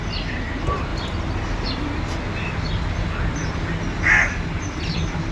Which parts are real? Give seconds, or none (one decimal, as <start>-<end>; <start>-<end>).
0.0-5.3